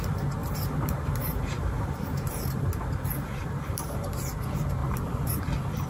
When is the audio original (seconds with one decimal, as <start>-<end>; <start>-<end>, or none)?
0.0-0.4; 2.8-3.4; 4.3-4.8; 5.4-5.9